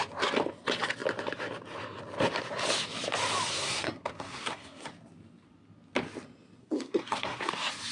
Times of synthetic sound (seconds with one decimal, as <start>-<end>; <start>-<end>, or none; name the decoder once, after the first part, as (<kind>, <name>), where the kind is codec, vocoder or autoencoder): 3.5-4.9 (codec, SNAC); 6.6-7.5